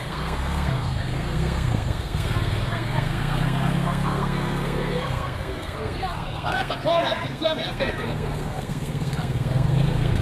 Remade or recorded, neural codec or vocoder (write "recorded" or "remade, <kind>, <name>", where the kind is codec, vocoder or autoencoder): remade, codec, SNAC